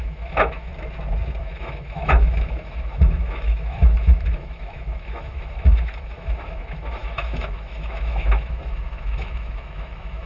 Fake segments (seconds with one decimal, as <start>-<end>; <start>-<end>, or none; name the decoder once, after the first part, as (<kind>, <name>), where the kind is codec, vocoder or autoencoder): 0.0-0.7 (autoencoder, DAC-VAE); 1.4-10.3